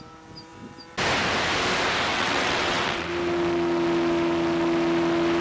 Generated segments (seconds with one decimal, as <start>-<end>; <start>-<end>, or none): 2.1-3.1